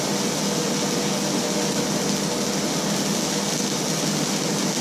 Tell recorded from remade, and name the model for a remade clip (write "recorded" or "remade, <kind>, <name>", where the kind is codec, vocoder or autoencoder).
recorded